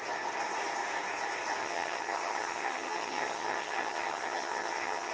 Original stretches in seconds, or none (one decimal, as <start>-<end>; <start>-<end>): 0.0-1.6